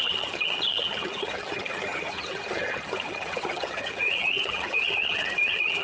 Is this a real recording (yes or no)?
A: no